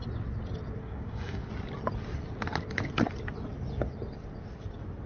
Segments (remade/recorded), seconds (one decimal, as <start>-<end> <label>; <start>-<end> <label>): 0.0-0.8 recorded; 0.8-1.5 remade; 1.5-5.1 recorded